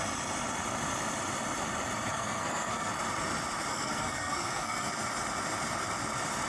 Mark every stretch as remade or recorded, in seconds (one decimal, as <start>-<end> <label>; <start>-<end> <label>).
0.0-2.1 recorded; 2.1-2.9 remade; 2.9-3.7 recorded; 3.7-4.9 remade; 4.9-6.5 recorded